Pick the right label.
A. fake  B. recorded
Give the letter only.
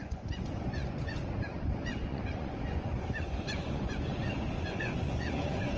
A